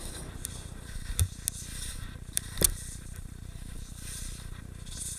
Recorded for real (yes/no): yes